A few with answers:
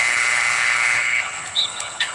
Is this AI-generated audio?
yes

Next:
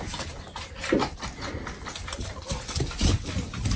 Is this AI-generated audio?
no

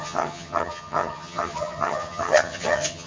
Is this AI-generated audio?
yes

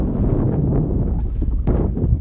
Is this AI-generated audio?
yes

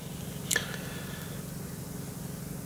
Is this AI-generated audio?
no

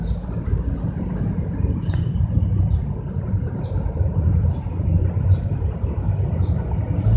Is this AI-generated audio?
no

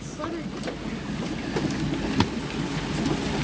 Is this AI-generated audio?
no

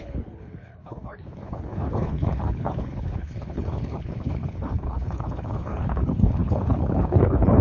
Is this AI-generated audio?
yes